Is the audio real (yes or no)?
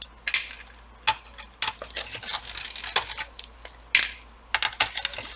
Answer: yes